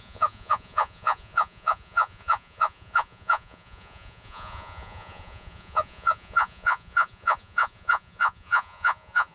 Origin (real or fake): fake